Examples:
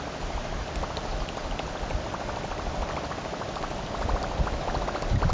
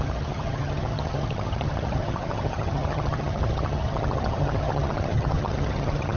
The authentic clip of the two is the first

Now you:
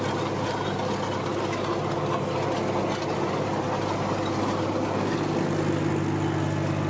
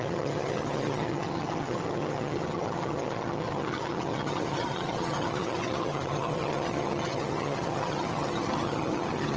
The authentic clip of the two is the first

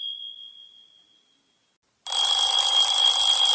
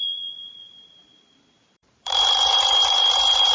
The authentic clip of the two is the first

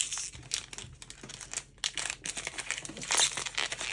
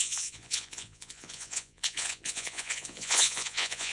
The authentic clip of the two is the first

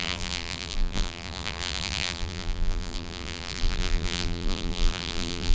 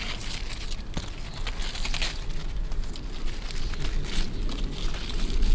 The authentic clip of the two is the second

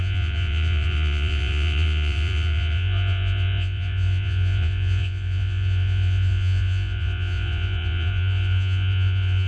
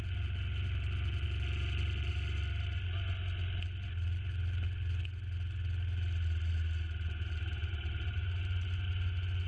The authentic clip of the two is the second